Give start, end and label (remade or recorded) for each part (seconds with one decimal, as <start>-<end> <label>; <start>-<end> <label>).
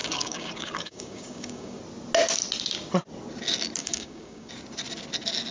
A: 0.0-1.8 remade; 1.8-3.8 recorded; 3.8-4.5 remade; 4.5-5.5 recorded